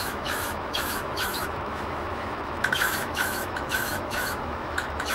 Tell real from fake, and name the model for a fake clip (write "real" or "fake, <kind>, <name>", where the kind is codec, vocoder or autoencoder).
fake, autoencoder, DAC-VAE